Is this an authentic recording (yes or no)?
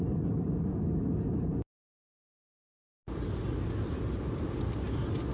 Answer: yes